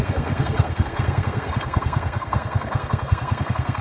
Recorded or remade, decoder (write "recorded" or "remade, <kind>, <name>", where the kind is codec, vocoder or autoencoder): remade, codec, SNAC